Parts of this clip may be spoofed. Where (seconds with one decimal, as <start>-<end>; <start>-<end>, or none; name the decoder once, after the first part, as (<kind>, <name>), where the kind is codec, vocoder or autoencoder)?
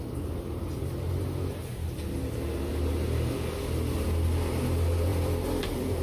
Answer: 5.1-6.0 (vocoder, BigVGAN v2)